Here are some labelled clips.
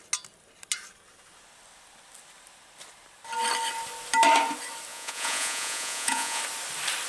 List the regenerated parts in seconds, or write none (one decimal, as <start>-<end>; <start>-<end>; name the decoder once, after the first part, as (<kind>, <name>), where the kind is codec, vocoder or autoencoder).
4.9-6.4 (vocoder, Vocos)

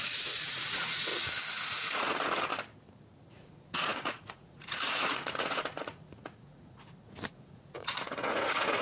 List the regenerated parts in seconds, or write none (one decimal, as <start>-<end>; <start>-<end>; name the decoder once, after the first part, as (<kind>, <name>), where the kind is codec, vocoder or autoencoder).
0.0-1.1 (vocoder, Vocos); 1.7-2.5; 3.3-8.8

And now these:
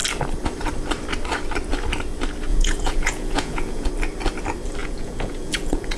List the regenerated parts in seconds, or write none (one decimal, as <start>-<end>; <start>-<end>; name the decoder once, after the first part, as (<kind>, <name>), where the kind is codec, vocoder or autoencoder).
2.5-3.9 (vocoder, Vocos); 4.8-6.0